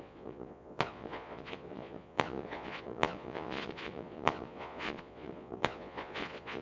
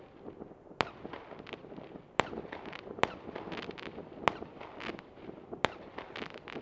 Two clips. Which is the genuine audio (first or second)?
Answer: second